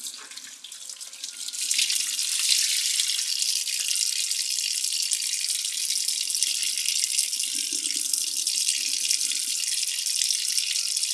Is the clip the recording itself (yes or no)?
yes